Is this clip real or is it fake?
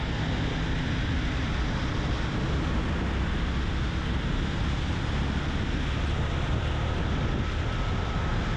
real